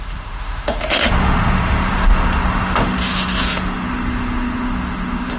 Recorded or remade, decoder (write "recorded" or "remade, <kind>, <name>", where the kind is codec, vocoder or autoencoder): remade, autoencoder, DAC-VAE